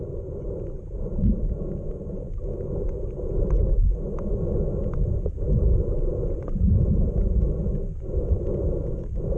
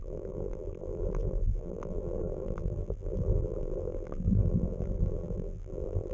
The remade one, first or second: second